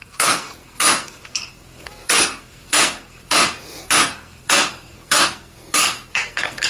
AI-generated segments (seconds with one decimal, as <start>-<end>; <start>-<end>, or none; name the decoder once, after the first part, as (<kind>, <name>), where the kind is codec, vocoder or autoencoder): 0.0-6.7 (codec, SNAC)